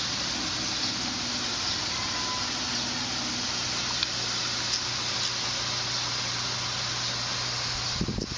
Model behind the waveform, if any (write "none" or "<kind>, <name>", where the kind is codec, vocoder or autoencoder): none